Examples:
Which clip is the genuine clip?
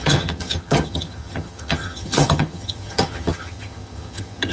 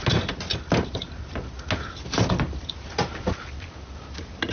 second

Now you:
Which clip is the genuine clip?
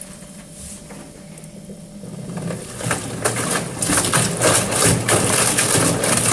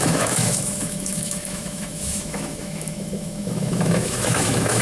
first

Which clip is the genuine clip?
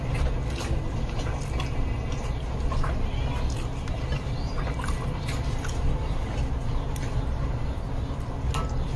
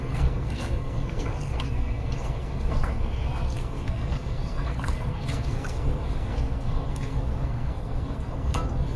first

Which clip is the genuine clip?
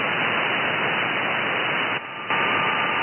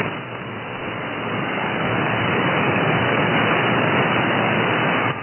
first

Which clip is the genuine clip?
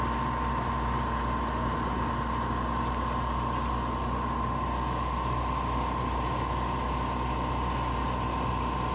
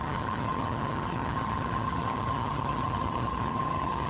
first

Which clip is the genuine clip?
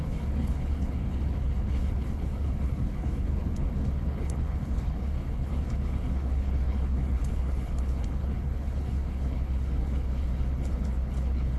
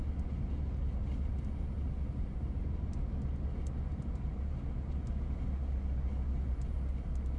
second